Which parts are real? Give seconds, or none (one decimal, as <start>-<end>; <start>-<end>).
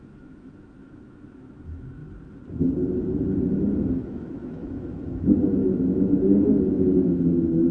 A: 2.0-4.1